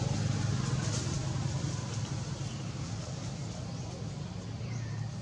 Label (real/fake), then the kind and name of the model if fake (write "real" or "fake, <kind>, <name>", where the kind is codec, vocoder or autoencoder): real